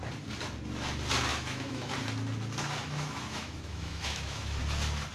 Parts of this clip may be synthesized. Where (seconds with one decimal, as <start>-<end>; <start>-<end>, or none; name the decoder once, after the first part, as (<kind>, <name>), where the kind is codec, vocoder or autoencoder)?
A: 1.3-1.9 (autoencoder, DAC-VAE); 2.8-4.6